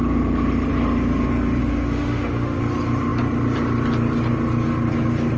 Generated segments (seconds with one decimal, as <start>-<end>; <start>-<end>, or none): 1.6-2.6

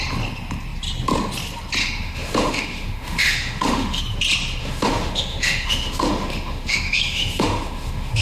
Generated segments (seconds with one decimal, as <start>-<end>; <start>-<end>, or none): 1.8-4.0; 4.6-8.2